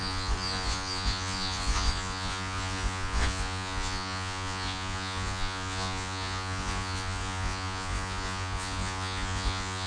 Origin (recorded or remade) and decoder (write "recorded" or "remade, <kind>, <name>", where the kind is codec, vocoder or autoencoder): remade, vocoder, Vocos